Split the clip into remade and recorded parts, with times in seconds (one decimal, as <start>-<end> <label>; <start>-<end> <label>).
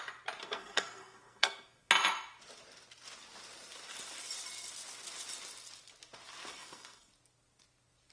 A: 0.0-0.4 recorded; 0.4-1.9 remade; 1.9-6.5 recorded; 6.5-7.1 remade; 7.1-8.1 recorded